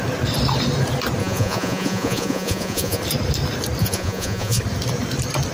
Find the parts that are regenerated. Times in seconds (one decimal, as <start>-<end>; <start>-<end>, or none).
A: 1.2-3.0; 3.8-4.6